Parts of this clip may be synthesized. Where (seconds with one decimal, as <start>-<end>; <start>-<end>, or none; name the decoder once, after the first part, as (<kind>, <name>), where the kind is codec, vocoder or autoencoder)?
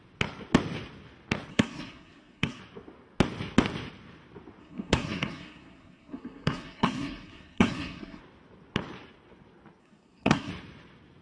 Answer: 1.5-2.6 (codec, SNAC); 4.6-8.2; 9.8-10.5